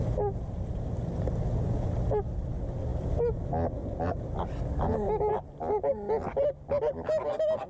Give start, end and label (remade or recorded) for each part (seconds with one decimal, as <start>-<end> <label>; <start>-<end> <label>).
0.0-7.7 recorded